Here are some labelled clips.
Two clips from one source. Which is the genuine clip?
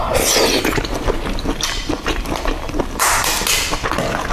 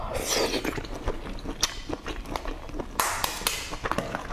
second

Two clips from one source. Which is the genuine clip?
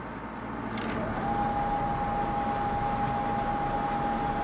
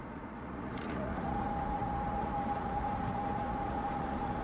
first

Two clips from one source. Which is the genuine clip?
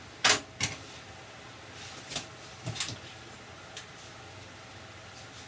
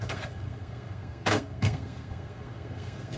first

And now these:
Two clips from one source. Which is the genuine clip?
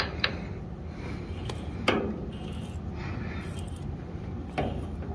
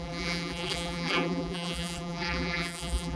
first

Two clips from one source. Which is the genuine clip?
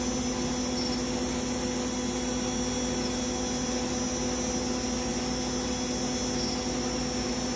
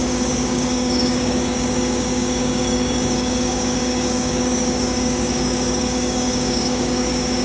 first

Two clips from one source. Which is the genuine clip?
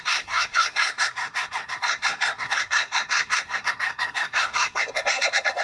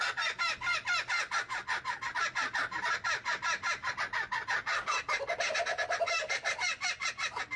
second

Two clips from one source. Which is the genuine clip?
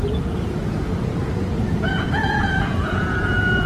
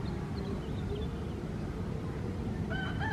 second